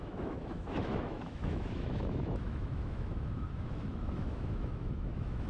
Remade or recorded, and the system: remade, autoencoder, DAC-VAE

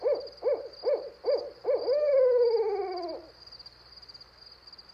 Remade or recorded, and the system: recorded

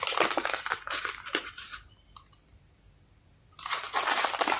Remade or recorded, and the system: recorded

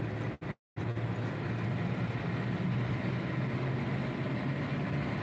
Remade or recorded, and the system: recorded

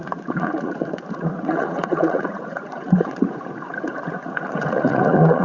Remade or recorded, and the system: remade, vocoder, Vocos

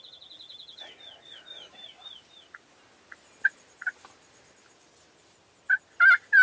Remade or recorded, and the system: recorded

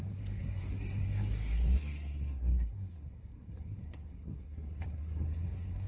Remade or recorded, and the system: remade, codec, SNAC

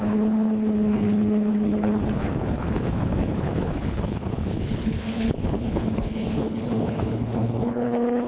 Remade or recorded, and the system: remade, codec, HILCodec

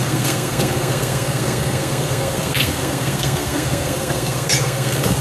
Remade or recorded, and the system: remade, codec, SNAC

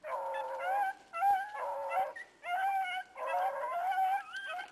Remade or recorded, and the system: recorded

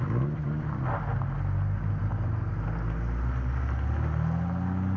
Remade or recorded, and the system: recorded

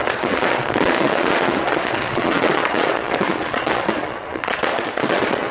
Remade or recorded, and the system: remade, vocoder, Vocos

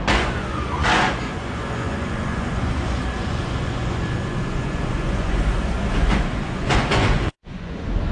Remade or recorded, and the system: remade, vocoder, Vocos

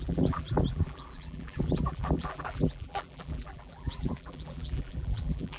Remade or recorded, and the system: remade, vocoder, BigVGAN v2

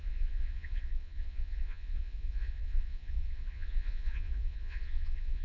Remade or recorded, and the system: remade, vocoder, Vocos